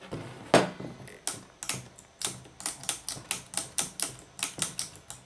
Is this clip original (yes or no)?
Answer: yes